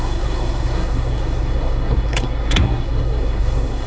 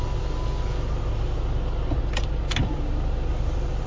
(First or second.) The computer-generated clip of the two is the first